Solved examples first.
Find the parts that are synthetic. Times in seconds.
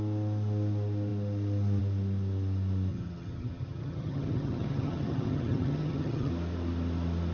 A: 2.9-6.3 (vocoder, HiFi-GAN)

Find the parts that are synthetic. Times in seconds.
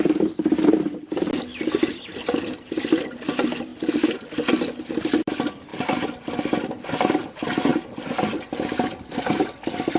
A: 0.0-5.7 (vocoder, BigVGAN v2); 6.2-7.7; 8.3-10.0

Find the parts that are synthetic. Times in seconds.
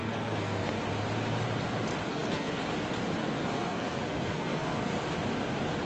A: 0.0-0.7 (codec, SNAC); 2.1-2.6; 3.2-4.9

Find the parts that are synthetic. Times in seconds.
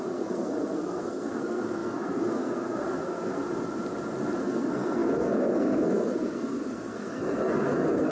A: 0.0-3.4 (codec, SNAC); 4.4-8.1